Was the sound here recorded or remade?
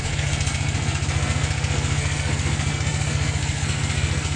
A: remade